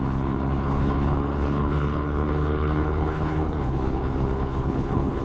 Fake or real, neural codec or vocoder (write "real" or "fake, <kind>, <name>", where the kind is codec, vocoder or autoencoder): fake, codec, HILCodec